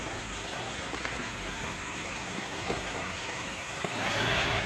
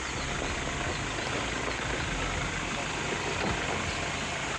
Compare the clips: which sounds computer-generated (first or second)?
first